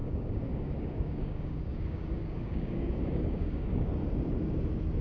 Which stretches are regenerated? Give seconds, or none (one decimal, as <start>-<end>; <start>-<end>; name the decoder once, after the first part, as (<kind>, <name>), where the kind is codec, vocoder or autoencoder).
0.0-3.9 (codec, DAC)